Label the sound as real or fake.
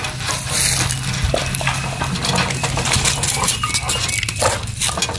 real